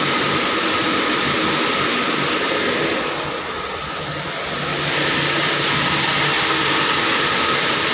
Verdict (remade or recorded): recorded